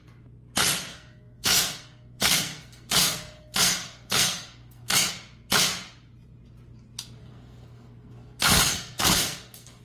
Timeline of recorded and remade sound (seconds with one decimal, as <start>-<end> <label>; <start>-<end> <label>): 0.0-0.9 recorded; 0.9-5.1 remade; 5.1-7.2 recorded; 7.2-9.8 remade